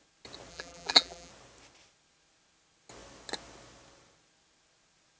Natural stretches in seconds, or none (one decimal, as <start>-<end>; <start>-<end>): 0.0-0.5; 1.3-5.2